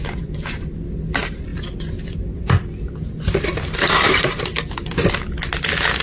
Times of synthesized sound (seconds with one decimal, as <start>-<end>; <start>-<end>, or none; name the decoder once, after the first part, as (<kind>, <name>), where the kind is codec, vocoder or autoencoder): none